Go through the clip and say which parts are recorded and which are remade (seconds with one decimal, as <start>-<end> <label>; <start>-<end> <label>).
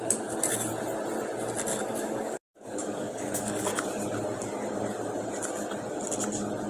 0.0-1.7 recorded; 1.7-3.8 remade; 3.8-6.7 recorded